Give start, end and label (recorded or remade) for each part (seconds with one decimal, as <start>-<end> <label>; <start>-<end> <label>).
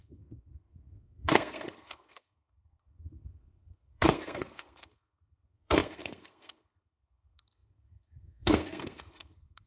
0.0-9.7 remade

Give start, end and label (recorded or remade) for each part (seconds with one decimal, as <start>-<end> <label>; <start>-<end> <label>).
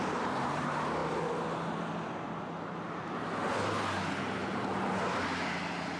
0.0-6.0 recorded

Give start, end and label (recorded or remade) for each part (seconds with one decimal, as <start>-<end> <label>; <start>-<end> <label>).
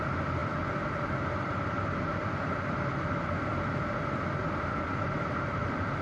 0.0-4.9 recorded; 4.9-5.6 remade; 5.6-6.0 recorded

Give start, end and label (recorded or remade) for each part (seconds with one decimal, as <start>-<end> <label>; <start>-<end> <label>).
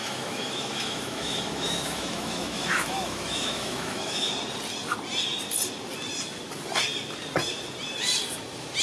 0.0-4.3 remade; 4.3-8.8 recorded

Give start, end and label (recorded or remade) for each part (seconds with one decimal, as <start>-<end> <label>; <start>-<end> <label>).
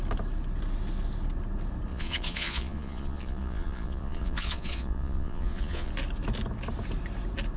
0.0-1.9 recorded; 1.9-5.9 remade; 5.9-7.6 recorded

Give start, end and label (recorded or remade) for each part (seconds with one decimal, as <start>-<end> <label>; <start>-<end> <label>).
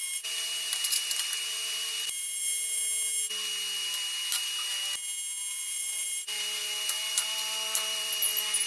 0.0-2.8 remade; 2.8-5.5 recorded; 5.5-8.7 remade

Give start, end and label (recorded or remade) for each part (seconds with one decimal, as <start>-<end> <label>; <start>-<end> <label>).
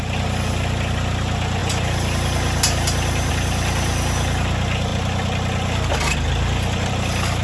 0.0-7.4 recorded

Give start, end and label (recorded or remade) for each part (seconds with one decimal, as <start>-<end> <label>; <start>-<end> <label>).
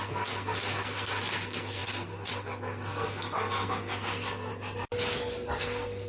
0.0-4.5 remade; 4.5-5.6 recorded; 5.6-6.1 remade